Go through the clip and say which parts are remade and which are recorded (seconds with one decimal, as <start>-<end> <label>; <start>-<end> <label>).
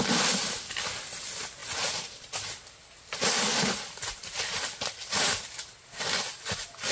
0.0-6.9 recorded